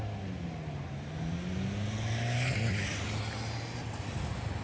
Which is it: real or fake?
real